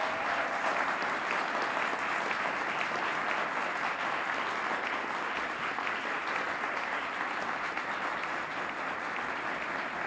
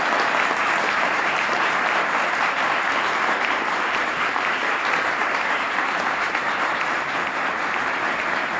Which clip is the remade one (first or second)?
second